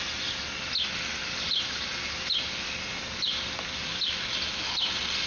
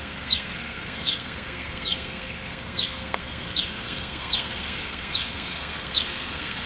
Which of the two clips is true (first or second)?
first